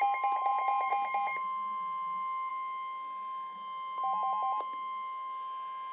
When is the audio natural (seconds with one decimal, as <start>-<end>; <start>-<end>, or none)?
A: 0.0-5.9